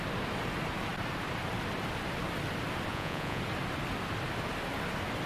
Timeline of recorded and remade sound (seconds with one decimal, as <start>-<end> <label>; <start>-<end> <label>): 0.0-2.9 recorded; 2.9-3.4 remade; 3.4-5.3 recorded

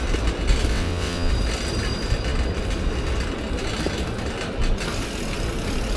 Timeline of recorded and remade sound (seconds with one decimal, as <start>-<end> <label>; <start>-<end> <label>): 0.0-0.7 recorded; 0.7-1.3 remade; 1.3-6.0 recorded

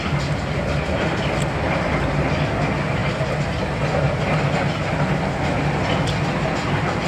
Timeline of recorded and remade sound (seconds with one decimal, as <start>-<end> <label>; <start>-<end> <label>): 0.0-7.1 recorded

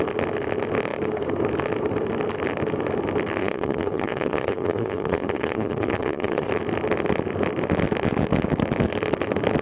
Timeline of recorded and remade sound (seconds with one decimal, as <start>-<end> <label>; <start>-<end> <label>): 0.0-3.4 recorded; 3.4-6.5 remade; 6.5-9.6 recorded

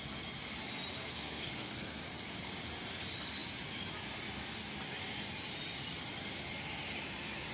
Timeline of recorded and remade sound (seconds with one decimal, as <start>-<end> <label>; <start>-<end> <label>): 0.0-1.1 recorded; 1.1-2.0 remade; 2.0-7.5 recorded